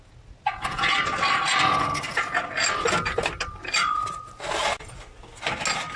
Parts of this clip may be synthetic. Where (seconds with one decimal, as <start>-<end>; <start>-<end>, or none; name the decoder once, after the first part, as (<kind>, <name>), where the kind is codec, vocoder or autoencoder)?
none